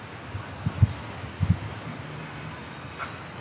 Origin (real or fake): real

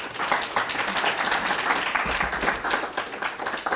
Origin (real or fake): real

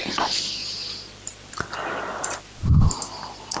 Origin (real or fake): real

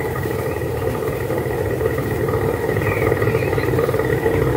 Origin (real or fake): real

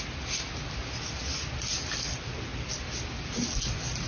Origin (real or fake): real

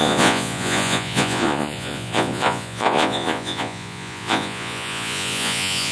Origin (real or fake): fake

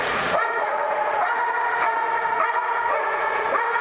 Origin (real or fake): fake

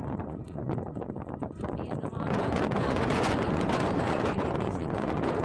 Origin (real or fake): fake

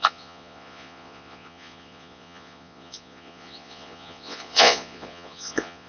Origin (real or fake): fake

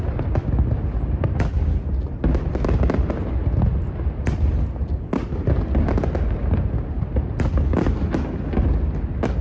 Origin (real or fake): real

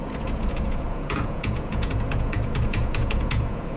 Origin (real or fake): fake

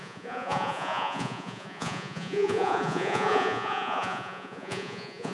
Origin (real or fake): fake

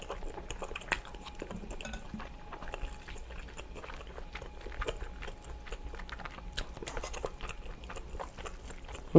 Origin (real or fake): real